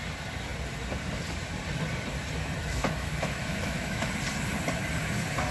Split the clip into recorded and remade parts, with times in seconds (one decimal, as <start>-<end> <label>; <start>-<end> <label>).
0.0-2.6 recorded; 2.6-4.1 remade; 4.1-5.5 recorded